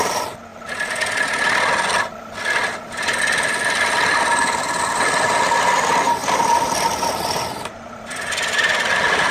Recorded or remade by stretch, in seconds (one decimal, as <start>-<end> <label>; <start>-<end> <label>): 0.0-9.3 recorded